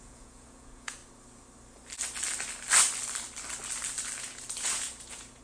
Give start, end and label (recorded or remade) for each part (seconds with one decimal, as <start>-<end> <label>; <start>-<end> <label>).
0.0-1.0 remade; 1.0-4.2 recorded; 4.2-5.4 remade